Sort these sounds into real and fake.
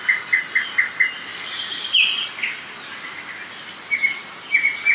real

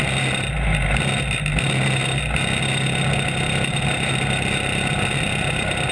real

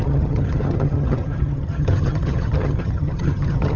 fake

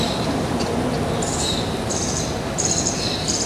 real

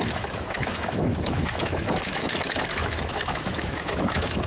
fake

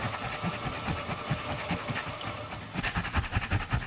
real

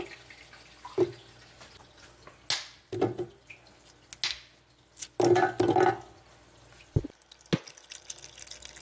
real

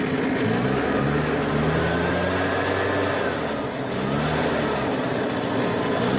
real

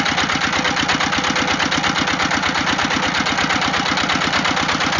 real